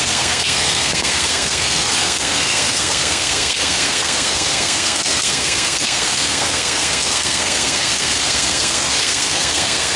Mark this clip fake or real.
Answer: fake